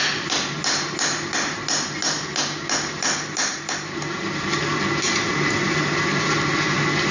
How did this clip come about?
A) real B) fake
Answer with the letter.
A